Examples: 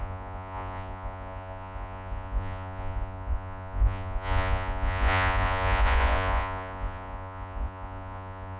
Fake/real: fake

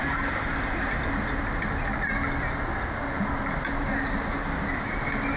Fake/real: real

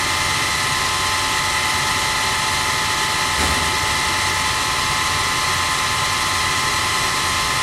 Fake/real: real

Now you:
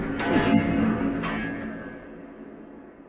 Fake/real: real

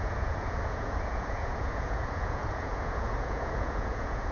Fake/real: fake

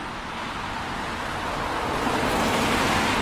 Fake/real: real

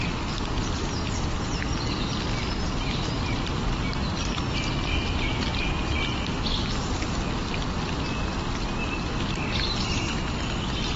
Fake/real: real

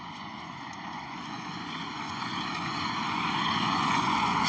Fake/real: fake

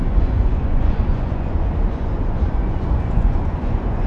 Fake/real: fake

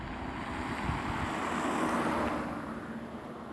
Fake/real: real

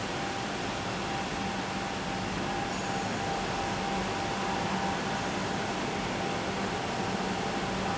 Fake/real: real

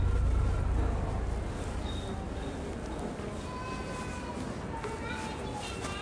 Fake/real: real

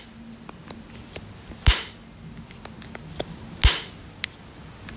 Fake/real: real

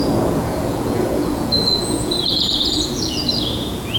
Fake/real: fake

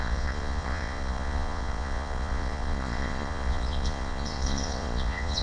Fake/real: fake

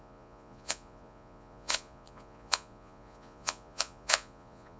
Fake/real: fake